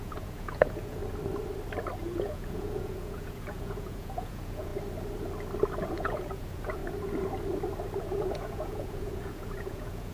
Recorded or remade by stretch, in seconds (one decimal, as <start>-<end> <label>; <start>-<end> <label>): 0.0-1.0 remade; 1.0-2.0 recorded; 2.0-4.7 remade; 4.7-5.9 recorded; 5.9-6.8 remade; 6.8-8.0 recorded; 8.0-10.1 remade